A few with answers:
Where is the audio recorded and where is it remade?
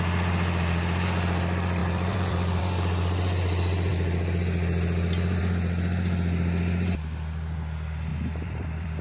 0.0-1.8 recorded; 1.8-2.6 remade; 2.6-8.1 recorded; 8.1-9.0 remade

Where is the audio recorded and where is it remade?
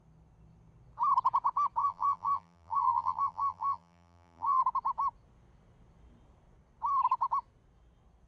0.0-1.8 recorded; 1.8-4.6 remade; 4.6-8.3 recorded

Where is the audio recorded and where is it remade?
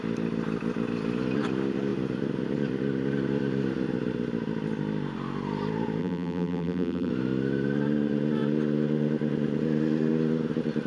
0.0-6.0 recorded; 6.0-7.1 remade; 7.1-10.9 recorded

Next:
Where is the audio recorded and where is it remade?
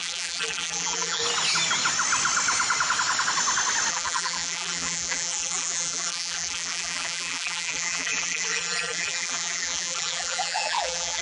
0.0-1.2 remade; 1.2-3.9 recorded; 3.9-11.2 remade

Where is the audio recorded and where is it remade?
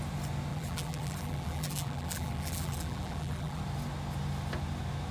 0.0-0.5 recorded; 0.5-3.6 remade; 3.6-5.1 recorded